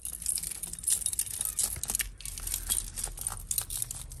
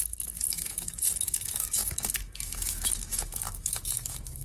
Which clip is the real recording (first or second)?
first